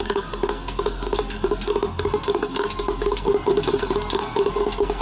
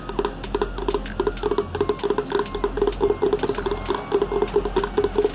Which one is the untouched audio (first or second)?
second